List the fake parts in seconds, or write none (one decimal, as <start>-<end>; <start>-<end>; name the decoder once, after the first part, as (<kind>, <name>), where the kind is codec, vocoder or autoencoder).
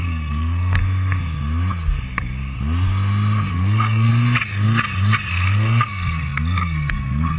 0.0-0.8 (codec, SNAC); 3.5-4.1; 5.3-7.4